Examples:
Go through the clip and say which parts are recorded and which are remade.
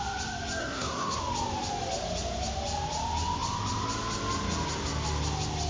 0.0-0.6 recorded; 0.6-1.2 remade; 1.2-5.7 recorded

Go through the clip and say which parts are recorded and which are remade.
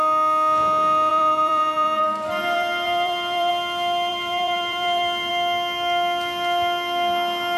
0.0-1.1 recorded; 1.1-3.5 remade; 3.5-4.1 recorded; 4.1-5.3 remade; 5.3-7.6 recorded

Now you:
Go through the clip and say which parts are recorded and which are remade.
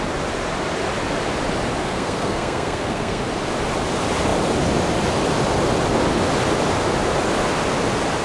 0.0-1.8 recorded; 1.8-3.2 remade; 3.2-8.2 recorded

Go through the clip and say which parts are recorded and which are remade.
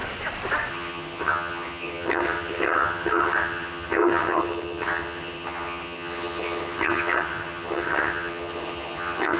0.0-0.7 recorded; 0.7-9.4 remade